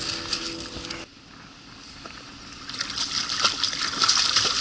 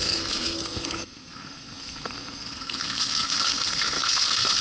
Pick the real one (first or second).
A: first